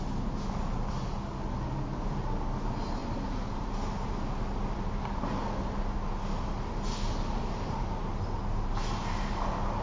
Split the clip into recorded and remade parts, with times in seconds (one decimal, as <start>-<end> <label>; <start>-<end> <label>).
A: 0.0-3.0 recorded; 3.0-3.7 remade; 3.7-9.8 recorded